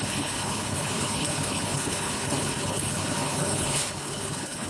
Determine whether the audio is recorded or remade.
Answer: remade